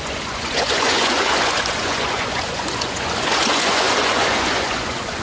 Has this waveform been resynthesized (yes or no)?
yes